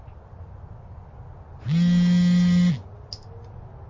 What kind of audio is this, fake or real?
real